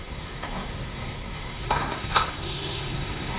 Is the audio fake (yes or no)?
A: yes